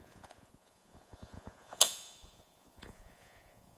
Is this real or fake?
fake